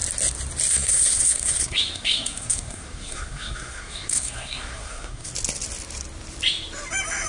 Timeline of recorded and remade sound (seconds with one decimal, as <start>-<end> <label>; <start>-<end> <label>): 0.0-0.7 recorded; 0.7-5.3 remade; 5.3-7.3 recorded